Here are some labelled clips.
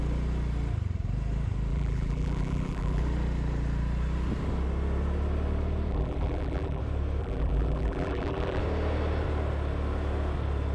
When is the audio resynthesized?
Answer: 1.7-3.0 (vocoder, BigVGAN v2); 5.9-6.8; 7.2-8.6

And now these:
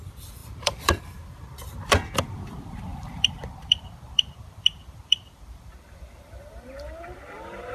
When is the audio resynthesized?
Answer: 0.0-7.7 (vocoder, BigVGAN v2)

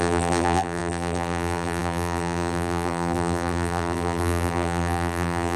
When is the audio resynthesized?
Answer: 0.0-5.6 (vocoder, BigVGAN v2)

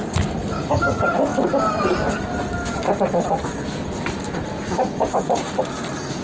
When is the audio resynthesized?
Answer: 1.3-5.0 (vocoder, BigVGAN v2)

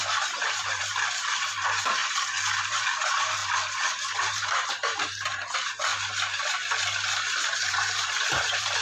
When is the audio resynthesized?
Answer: 0.0-2.0 (vocoder, BigVGAN v2); 2.6-5.9; 7.7-8.8

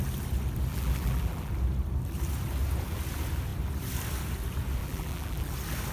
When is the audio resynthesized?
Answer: 0.7-1.5 (vocoder, BigVGAN v2); 4.8-5.5

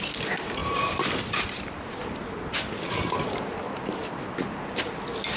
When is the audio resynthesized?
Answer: 0.6-2.9 (vocoder, BigVGAN v2)

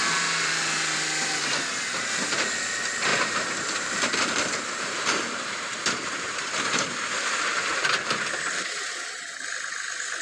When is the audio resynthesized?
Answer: 0.0-0.5 (vocoder, BigVGAN v2); 3.1-6.6